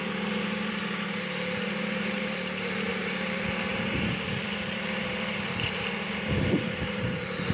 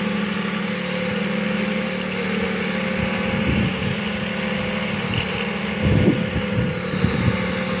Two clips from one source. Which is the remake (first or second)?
first